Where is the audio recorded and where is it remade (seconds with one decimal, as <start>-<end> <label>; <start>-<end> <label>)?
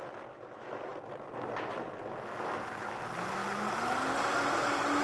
0.0-5.0 recorded